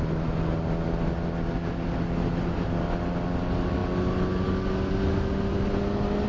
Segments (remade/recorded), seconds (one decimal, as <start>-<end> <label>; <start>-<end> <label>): 0.0-6.3 recorded